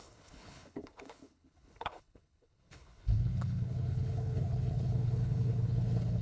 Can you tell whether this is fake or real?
fake